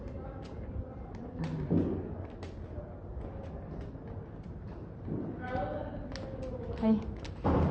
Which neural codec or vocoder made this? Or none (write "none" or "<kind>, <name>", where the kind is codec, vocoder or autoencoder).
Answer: none